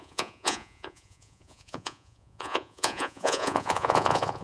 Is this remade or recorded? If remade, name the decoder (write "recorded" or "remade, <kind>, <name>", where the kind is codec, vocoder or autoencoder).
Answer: remade, vocoder, Vocos